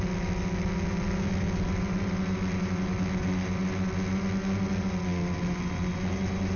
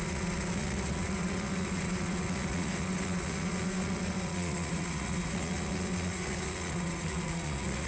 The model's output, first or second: second